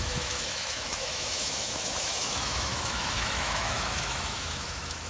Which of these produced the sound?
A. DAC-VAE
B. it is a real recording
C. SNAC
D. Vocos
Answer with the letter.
A